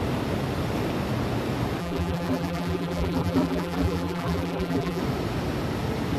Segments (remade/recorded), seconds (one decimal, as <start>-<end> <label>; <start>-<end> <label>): 0.0-1.8 recorded; 1.8-5.0 remade; 5.0-6.2 recorded